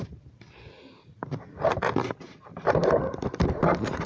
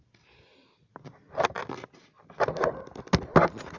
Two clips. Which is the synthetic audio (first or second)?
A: first